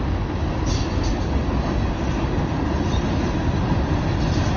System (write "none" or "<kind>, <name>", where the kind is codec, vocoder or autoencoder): none